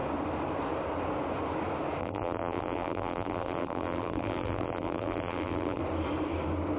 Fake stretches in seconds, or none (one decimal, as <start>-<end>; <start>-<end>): 2.0-5.8